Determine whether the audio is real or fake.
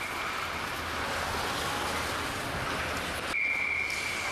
real